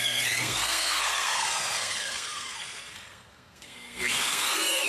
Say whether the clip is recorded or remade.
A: remade